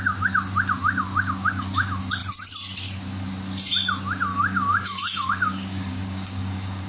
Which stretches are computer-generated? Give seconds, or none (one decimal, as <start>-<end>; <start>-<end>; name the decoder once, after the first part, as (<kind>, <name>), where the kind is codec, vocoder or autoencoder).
4.3-6.9 (codec, DAC)